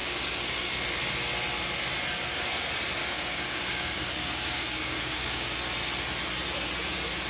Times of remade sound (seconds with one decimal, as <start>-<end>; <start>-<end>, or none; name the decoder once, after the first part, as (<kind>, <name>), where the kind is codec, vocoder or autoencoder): 0.0-0.7 (codec, DAC); 3.0-5.6